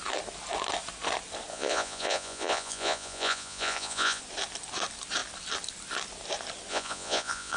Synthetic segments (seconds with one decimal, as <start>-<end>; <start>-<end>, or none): 1.5-4.2; 6.7-7.6